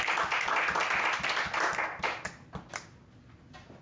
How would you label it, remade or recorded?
recorded